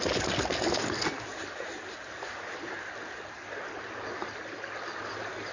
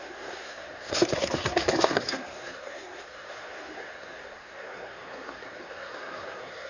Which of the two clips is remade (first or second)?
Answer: second